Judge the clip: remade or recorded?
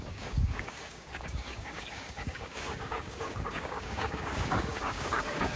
remade